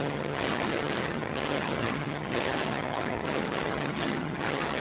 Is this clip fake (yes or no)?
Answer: yes